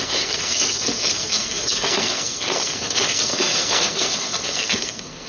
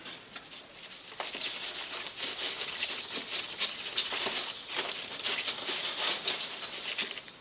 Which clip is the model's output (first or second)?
first